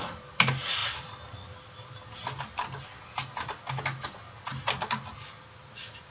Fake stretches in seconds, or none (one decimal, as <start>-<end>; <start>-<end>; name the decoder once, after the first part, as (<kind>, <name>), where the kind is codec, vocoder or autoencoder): none